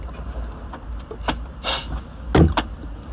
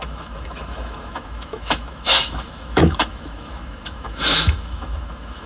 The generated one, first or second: second